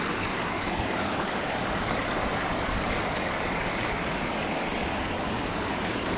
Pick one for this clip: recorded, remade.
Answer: remade